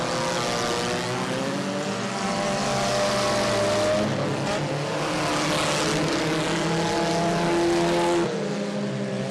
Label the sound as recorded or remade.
recorded